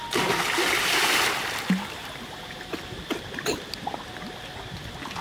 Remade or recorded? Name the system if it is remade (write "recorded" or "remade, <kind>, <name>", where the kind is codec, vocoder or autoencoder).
recorded